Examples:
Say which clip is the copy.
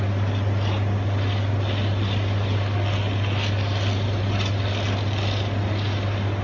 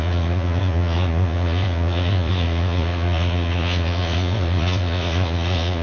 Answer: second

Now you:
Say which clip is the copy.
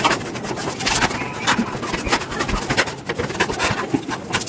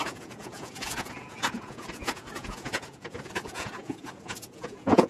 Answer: second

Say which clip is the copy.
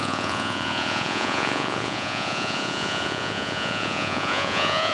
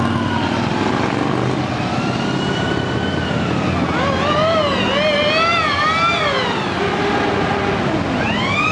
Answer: first